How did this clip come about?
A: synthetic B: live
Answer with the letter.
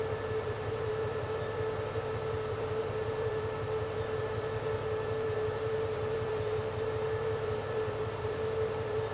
A